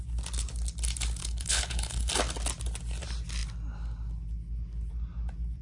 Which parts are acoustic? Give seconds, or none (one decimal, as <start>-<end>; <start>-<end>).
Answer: 0.0-1.2; 2.1-5.6